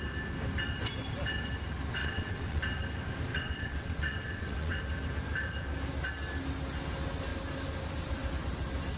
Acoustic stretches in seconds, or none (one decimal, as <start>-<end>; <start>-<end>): 0.0-2.0; 2.6-3.3; 4.8-9.0